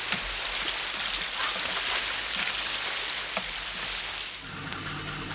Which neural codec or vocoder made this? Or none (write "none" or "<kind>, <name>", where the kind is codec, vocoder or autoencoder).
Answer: none